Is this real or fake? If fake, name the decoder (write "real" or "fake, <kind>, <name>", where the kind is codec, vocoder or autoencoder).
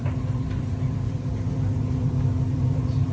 fake, vocoder, BigVGAN v2